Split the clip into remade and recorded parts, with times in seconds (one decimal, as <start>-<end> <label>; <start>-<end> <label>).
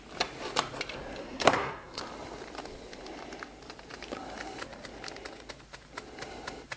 0.0-1.2 recorded; 1.2-2.0 remade; 2.0-6.8 recorded